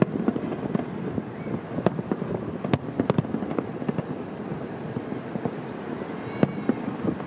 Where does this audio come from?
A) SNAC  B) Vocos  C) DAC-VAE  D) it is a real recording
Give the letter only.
D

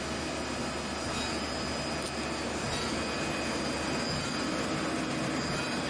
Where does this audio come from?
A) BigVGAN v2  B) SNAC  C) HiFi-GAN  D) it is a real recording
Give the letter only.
D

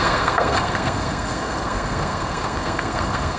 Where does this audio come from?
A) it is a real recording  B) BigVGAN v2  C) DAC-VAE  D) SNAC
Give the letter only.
D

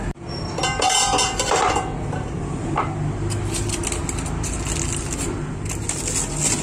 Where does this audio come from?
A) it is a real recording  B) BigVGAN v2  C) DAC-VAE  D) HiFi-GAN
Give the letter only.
A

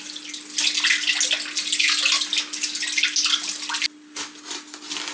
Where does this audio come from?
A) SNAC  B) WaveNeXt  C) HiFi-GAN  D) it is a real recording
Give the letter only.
D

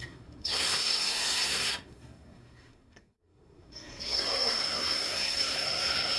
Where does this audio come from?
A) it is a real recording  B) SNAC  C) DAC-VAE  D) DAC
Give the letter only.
B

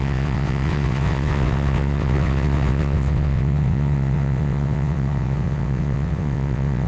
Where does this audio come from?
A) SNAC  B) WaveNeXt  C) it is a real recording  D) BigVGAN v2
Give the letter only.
B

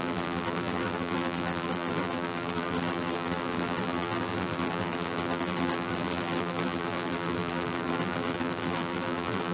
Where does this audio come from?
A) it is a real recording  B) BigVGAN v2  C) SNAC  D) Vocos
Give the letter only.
B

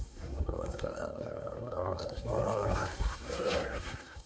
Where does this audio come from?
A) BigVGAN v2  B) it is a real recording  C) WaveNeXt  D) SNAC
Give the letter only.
D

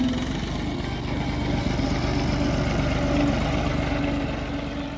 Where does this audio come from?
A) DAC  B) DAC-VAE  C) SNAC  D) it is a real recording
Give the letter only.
D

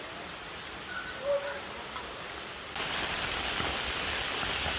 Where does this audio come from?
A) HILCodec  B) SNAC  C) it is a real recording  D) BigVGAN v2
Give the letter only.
C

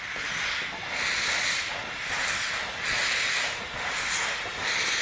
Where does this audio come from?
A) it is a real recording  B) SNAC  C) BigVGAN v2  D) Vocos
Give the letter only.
A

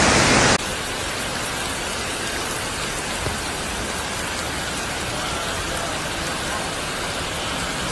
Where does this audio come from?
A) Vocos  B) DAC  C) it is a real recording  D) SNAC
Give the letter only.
C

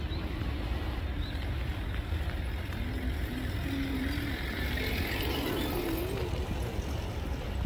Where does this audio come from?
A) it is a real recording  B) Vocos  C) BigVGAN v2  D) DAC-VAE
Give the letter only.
A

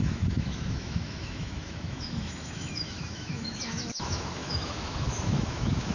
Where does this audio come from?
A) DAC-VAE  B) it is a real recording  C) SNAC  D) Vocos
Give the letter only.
A